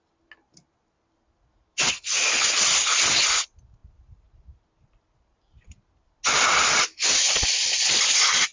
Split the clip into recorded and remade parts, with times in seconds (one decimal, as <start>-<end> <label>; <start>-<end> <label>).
0.0-8.5 recorded